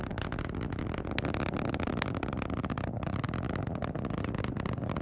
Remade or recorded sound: recorded